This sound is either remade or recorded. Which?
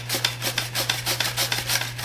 recorded